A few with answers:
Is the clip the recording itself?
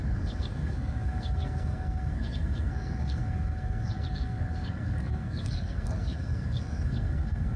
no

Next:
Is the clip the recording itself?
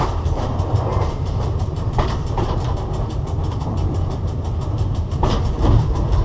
no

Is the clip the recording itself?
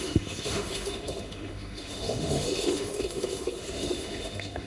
no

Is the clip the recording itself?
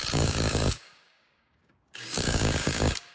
no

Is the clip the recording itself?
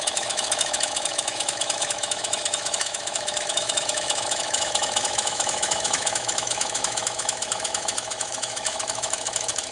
no